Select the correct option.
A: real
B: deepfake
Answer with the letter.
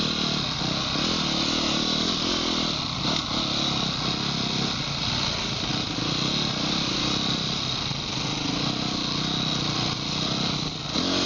A